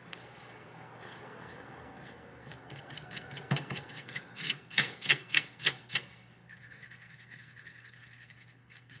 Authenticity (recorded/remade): remade